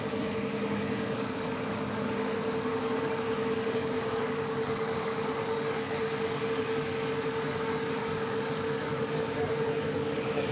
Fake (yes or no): yes